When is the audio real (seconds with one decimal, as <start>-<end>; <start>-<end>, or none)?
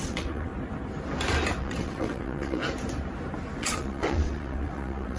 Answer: 0.5-1.6; 2.6-3.6